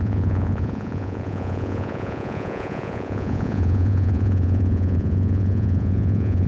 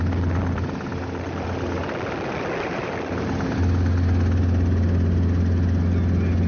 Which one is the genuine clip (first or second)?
second